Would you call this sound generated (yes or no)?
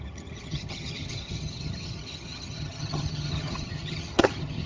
yes